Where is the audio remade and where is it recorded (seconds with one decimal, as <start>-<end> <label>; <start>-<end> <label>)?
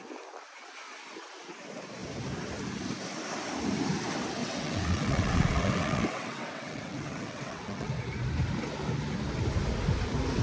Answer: 0.0-4.4 recorded; 4.4-7.9 remade; 7.9-10.4 recorded